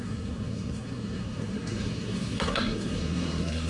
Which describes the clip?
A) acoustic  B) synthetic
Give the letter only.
B